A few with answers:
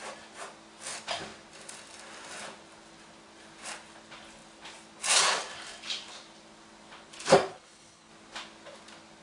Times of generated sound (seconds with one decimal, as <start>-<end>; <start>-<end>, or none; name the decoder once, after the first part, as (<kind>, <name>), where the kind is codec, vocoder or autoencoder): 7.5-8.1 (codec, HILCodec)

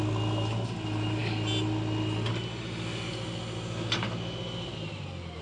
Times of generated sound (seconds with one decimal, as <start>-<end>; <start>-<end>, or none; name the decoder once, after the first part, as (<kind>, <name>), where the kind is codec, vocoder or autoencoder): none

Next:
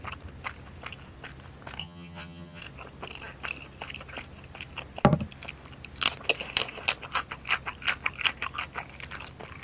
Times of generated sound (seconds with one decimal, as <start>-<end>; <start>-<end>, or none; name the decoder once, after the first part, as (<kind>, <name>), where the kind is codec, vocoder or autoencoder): 1.8-2.6 (vocoder, HiFi-GAN)

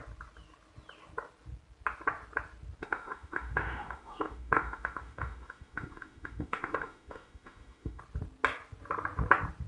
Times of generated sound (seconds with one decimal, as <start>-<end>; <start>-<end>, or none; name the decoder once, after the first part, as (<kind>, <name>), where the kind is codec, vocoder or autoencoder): 2.8-8.0 (autoencoder, DAC-VAE)